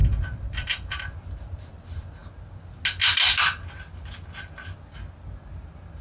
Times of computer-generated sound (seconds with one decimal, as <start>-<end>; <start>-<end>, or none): 0.0-2.2